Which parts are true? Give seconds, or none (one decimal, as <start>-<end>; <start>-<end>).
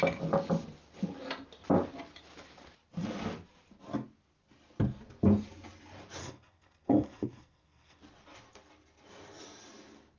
0.0-6.2; 8.0-10.2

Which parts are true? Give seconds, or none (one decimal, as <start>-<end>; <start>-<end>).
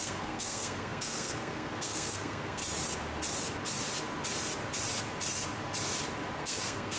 2.6-6.4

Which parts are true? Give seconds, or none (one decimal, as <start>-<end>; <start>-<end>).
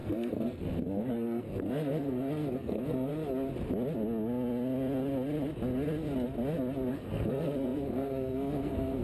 3.1-6.9